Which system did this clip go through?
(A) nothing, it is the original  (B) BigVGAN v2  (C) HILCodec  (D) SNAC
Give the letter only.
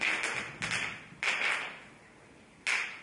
A